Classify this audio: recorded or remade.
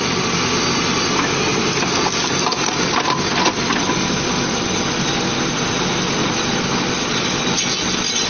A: recorded